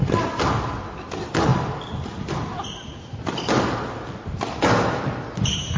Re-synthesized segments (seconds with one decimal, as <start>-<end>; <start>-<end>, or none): none